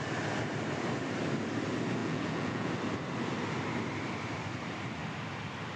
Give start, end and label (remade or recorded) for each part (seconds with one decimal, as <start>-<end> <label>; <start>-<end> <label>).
0.0-2.0 recorded; 2.0-2.7 remade; 2.7-5.8 recorded